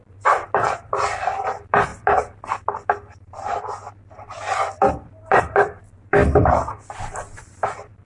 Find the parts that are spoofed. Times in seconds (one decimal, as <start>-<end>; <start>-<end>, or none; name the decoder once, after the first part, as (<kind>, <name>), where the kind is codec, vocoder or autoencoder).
0.0-1.9 (vocoder, BigVGAN v2); 3.3-8.0